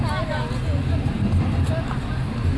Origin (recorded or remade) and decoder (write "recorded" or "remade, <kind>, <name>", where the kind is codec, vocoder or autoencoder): recorded